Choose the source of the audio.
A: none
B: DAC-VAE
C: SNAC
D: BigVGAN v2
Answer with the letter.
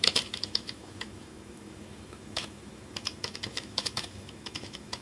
B